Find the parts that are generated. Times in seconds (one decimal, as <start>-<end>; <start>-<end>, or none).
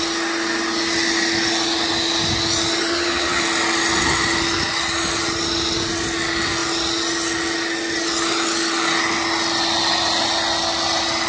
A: 2.9-3.4